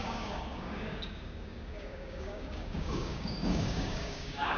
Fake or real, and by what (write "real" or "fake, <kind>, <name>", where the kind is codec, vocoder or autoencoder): fake, codec, DAC